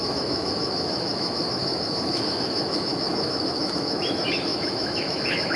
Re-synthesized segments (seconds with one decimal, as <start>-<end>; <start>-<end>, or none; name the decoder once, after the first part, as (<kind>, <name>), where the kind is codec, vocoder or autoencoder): 0.0-5.6 (autoencoder, DAC-VAE)